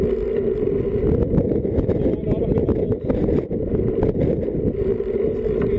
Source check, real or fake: real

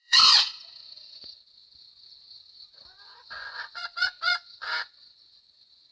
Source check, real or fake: fake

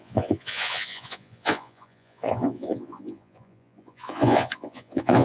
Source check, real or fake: fake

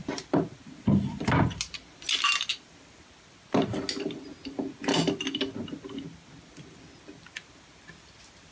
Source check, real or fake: real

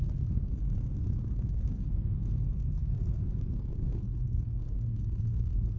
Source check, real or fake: fake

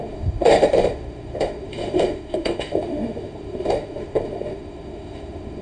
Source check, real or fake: fake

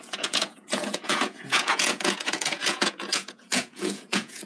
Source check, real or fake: fake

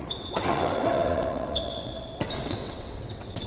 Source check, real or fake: fake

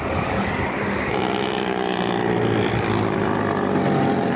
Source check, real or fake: real